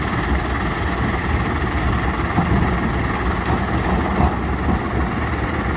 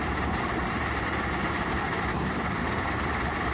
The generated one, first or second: second